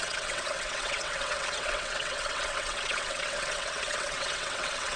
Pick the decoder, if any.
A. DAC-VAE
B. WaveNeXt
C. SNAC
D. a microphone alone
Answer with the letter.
B